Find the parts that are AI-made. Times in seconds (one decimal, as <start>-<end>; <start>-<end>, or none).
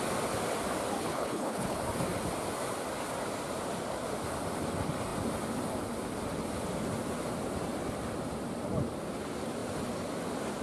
1.0-1.8